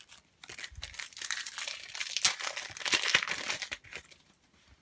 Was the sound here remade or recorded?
recorded